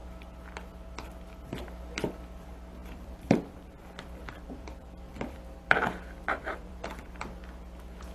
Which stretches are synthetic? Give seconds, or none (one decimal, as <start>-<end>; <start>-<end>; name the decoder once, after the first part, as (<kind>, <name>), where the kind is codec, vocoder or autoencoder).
2.8-7.2 (vocoder, BigVGAN v2)